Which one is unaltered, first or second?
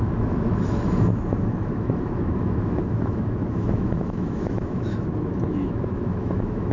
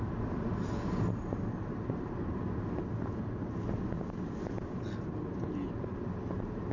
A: second